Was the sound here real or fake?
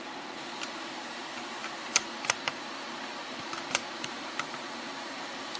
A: fake